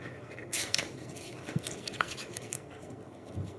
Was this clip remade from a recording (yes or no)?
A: yes